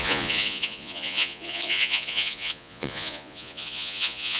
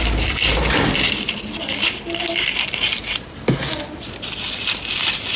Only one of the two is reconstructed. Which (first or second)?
first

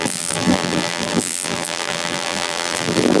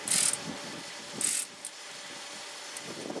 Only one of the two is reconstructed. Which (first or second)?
first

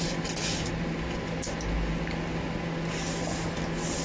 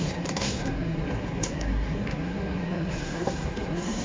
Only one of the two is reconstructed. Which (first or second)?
second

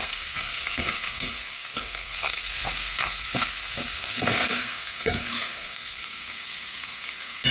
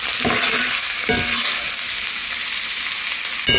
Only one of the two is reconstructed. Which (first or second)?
first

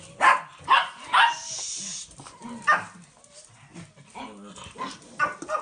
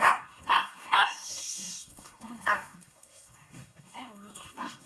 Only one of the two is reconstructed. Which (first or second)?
second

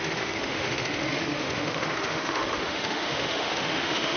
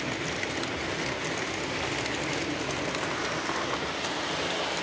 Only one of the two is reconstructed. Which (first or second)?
first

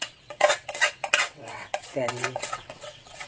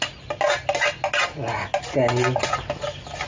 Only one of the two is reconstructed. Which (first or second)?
first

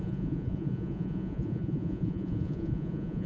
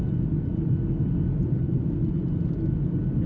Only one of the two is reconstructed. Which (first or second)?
first